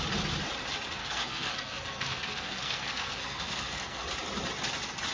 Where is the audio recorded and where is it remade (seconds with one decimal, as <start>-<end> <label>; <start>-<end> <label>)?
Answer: 0.0-1.0 recorded; 1.0-4.1 remade; 4.1-5.1 recorded